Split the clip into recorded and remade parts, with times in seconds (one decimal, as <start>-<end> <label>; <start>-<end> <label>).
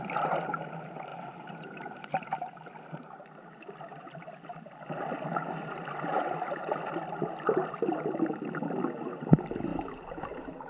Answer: 0.0-1.1 recorded; 1.1-2.5 remade; 2.5-9.7 recorded; 9.7-10.7 remade